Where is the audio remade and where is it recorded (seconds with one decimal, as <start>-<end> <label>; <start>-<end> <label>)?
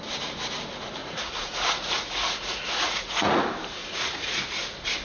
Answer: 0.0-1.0 recorded; 1.0-3.4 remade; 3.4-3.8 recorded; 3.8-5.0 remade